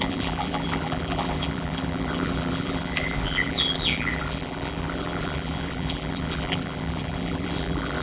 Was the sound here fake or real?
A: fake